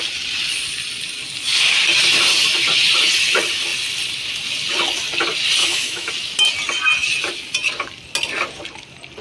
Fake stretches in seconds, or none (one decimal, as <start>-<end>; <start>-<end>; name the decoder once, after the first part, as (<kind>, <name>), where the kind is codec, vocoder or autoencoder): 5.6-6.1 (autoencoder, DAC-VAE)